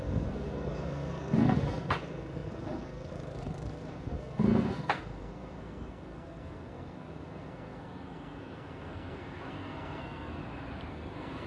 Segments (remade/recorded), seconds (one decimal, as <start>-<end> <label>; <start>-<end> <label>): 0.0-10.4 remade; 10.4-10.9 recorded; 10.9-11.5 remade